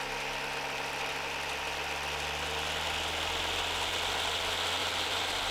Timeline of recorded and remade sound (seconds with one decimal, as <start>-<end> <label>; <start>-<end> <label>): 0.0-4.8 recorded; 4.8-5.5 remade